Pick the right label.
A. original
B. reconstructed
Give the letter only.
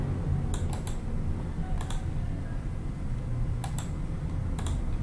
A